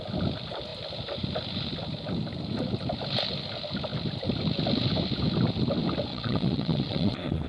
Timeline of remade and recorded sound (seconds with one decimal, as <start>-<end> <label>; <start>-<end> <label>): 0.0-6.1 recorded; 6.1-7.5 remade